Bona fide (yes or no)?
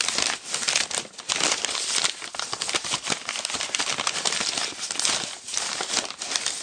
yes